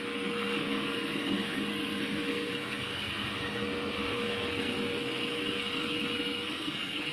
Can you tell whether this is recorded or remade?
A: remade